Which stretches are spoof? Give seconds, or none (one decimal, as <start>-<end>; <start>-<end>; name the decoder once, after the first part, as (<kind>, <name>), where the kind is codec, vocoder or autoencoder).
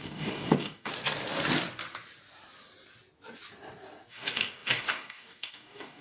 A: 0.0-0.9 (codec, DAC); 4.1-6.0